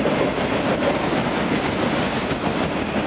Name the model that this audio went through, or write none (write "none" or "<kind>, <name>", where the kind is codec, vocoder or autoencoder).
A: none